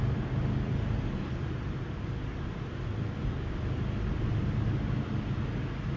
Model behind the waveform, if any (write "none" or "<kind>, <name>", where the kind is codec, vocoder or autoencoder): none